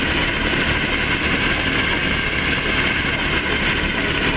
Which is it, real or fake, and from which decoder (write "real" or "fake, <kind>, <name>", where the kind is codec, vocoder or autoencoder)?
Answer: real